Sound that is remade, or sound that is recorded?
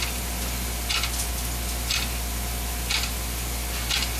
recorded